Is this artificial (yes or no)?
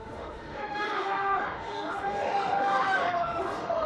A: yes